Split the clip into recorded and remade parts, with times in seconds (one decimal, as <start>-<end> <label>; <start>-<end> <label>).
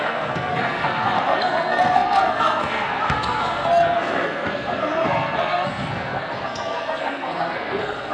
0.0-8.1 remade